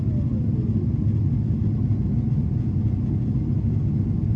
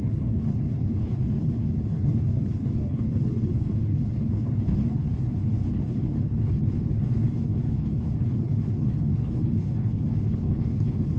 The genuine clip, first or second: first